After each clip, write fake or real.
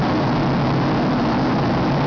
real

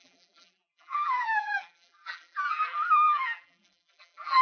fake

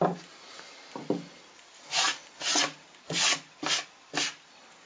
real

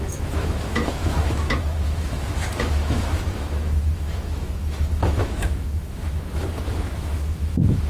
fake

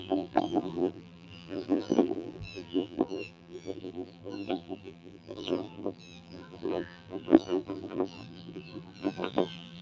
fake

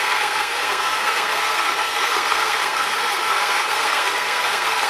fake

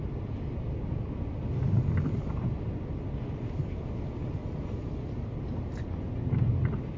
real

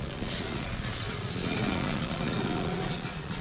fake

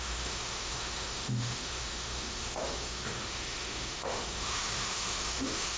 fake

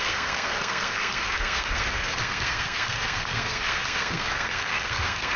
fake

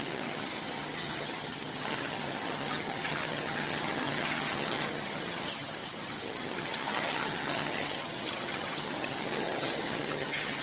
fake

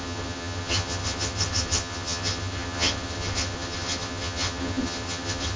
fake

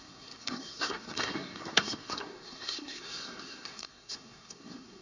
fake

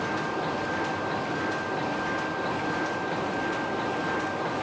real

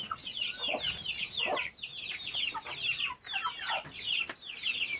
fake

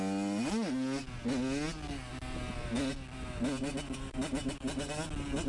real